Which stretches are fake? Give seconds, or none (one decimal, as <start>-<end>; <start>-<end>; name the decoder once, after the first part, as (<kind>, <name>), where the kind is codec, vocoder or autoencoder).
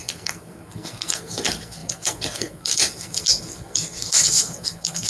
0.0-5.1 (codec, SNAC)